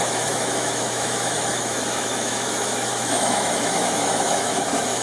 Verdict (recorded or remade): remade